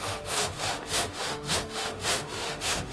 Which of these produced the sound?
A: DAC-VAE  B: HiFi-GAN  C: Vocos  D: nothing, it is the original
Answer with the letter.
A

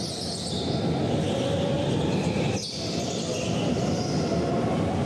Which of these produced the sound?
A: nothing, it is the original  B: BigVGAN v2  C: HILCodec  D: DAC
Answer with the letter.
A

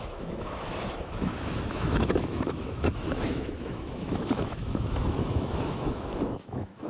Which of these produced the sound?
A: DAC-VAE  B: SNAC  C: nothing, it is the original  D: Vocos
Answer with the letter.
A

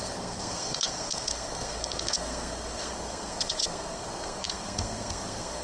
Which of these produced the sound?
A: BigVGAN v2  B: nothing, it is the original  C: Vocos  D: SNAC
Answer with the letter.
D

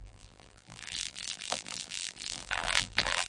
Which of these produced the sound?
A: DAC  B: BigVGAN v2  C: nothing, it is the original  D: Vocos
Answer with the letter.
B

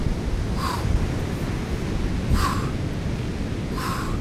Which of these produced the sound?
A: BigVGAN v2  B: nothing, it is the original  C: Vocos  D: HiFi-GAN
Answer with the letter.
B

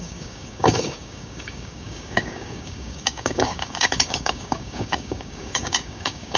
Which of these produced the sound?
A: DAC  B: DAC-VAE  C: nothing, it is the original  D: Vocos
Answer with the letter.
A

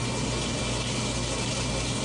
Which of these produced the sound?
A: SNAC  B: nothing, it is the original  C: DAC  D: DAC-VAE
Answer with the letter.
B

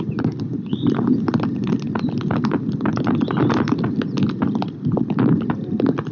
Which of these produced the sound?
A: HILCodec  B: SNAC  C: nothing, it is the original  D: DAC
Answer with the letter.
C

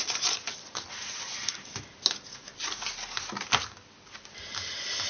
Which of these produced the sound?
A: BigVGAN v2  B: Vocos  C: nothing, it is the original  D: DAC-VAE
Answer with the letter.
C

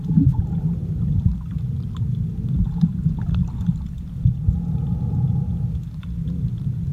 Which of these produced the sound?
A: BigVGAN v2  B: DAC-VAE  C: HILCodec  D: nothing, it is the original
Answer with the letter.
D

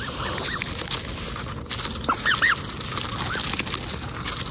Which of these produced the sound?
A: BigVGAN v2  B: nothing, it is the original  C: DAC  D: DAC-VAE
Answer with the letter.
B